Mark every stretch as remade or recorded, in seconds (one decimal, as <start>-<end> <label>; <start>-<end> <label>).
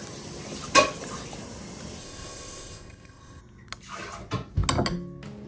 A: 0.0-2.0 recorded; 2.0-3.4 remade; 3.4-5.5 recorded